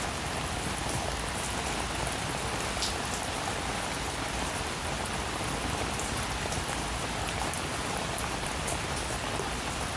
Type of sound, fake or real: real